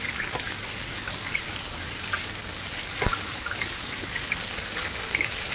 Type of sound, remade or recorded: remade